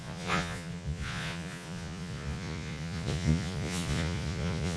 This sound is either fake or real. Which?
fake